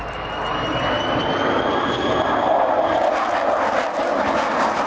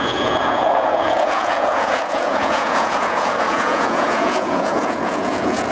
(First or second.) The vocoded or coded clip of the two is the second